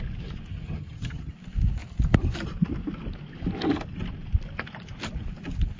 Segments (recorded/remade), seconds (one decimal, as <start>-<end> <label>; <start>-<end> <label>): 0.0-0.5 recorded; 0.5-1.3 remade; 1.3-5.8 recorded